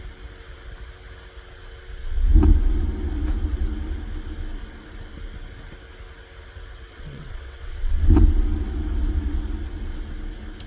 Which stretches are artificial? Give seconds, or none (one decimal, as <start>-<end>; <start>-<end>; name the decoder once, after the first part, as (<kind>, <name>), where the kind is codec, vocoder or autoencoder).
6.9-8.2 (vocoder, WaveNeXt)